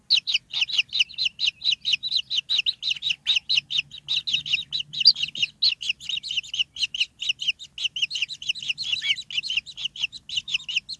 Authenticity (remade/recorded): recorded